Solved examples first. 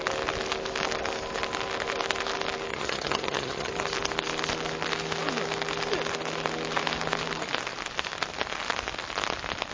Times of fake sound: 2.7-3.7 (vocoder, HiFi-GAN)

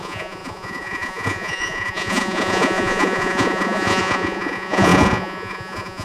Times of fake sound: 0.0-6.0 (vocoder, Vocos)

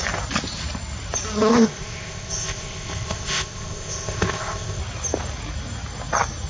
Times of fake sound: 1.5-4.8 (codec, ZipCodec)

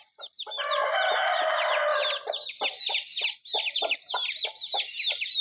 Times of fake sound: none

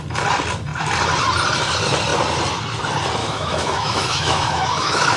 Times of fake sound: 3.2-5.2 (autoencoder, DAC-VAE)

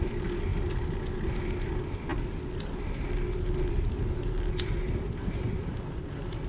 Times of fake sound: none